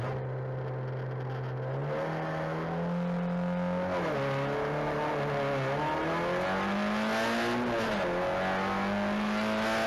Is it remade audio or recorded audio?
recorded